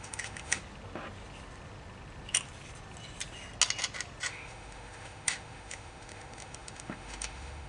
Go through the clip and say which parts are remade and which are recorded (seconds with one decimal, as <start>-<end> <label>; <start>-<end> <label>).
0.0-0.6 remade; 0.6-4.3 recorded; 4.3-7.7 remade